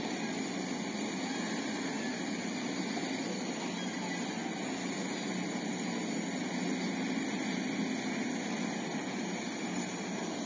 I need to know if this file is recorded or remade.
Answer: recorded